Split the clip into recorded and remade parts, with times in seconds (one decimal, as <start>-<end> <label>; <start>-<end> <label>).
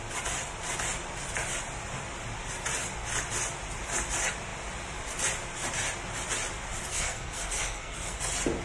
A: 0.0-6.9 recorded; 6.9-8.2 remade; 8.2-8.6 recorded